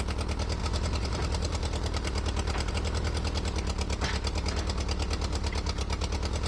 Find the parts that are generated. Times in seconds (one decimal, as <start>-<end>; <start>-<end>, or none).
0.6-2.7